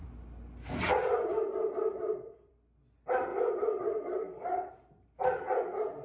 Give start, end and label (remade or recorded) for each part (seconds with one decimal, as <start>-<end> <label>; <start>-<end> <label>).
0.0-1.9 recorded; 1.9-2.5 remade; 2.5-3.3 recorded; 3.3-4.7 remade; 4.7-6.0 recorded

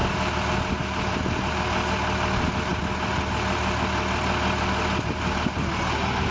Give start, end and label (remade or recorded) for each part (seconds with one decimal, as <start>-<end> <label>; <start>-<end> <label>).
0.0-0.5 remade; 0.5-6.3 recorded

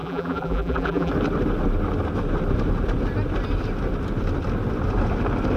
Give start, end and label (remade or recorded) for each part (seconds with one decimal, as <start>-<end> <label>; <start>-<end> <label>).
0.0-1.1 remade; 1.1-5.6 recorded

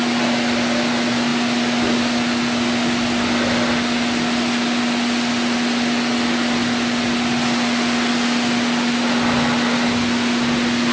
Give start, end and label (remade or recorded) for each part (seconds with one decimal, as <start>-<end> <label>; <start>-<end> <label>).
0.0-10.9 recorded

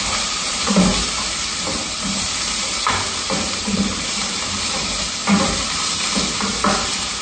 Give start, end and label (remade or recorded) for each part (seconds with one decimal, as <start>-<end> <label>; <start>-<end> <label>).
0.0-0.9 remade; 0.9-3.9 recorded; 3.9-7.2 remade

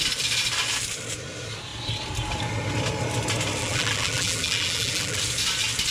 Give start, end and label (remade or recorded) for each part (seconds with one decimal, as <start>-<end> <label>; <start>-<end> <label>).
0.0-3.6 recorded; 3.6-5.2 remade; 5.2-5.9 recorded